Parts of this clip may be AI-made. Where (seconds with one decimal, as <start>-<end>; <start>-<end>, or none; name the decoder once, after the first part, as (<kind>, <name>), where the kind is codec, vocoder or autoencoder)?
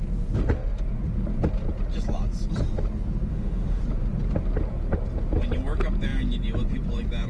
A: 3.3-3.8 (autoencoder, DAC-VAE)